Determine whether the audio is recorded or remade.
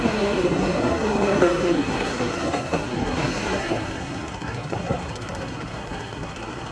remade